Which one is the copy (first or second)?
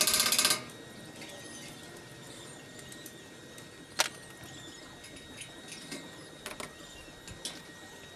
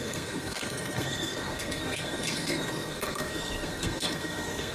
second